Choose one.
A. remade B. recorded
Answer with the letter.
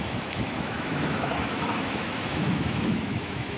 A